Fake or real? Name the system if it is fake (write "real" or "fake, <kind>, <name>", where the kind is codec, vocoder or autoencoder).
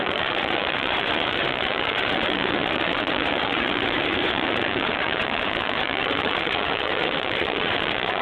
fake, vocoder, Vocos